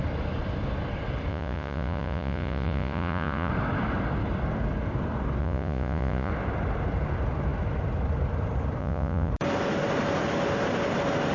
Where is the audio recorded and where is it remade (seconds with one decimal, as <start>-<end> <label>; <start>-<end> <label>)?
0.0-1.3 recorded; 1.3-3.5 remade; 3.5-5.4 recorded; 5.4-6.3 remade; 6.3-8.8 recorded; 8.8-9.3 remade; 9.3-11.3 recorded